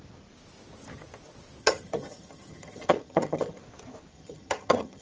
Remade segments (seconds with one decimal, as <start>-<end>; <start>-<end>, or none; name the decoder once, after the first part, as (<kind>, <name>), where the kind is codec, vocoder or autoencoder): 1.6-3.6 (vocoder, HiFi-GAN); 4.1-5.0